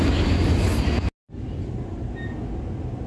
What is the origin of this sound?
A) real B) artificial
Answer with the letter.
A